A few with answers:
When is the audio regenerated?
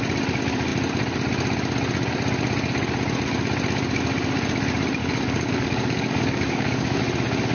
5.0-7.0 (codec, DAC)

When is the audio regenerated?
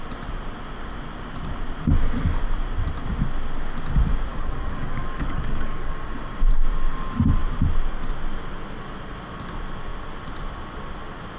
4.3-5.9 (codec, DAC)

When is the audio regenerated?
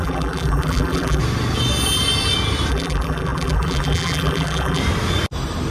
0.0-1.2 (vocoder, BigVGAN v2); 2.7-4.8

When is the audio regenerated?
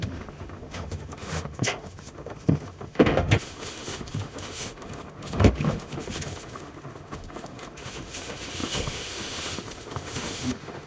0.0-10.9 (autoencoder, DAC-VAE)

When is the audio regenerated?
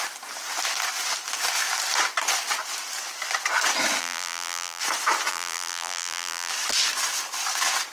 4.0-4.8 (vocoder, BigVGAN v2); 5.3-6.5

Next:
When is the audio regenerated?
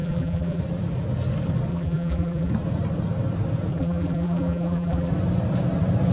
0.0-0.6 (vocoder, BigVGAN v2); 1.7-2.5; 3.7-5.1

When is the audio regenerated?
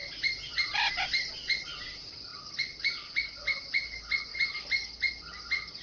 0.0-1.3 (vocoder, BigVGAN v2)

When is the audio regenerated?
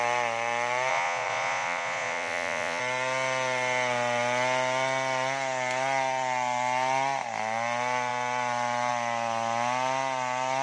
0.9-2.8 (vocoder, Vocos)